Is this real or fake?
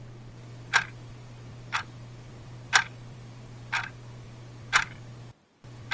fake